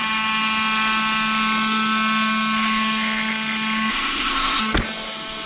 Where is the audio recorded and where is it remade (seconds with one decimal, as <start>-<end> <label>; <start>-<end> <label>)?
0.0-3.9 recorded; 3.9-4.6 remade; 4.6-5.5 recorded